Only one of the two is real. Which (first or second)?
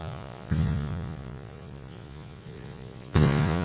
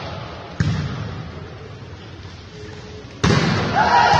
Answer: second